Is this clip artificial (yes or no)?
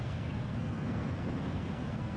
yes